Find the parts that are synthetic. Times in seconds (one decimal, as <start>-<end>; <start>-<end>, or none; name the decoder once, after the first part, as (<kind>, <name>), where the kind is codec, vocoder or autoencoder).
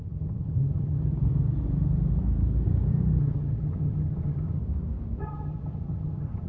0.0-1.1 (vocoder, HiFi-GAN); 3.2-4.6; 5.2-6.5